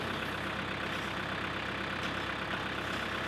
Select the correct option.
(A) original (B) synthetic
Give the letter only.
A